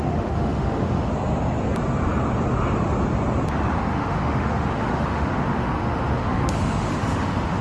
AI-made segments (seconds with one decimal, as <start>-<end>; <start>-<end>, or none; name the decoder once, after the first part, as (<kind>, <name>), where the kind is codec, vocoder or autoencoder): 0.0-1.1 (autoencoder, DAC-VAE); 3.8-7.6